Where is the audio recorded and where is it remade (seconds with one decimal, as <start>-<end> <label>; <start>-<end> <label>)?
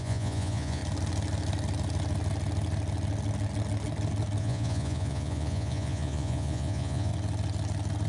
0.0-0.8 remade; 0.8-4.4 recorded; 4.4-7.1 remade; 7.1-8.1 recorded